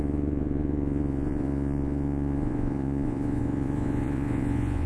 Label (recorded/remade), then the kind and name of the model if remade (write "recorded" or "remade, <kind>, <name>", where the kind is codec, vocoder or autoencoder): remade, vocoder, Vocos